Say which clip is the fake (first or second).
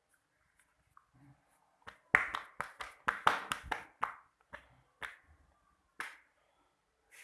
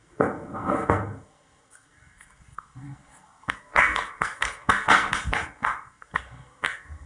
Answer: second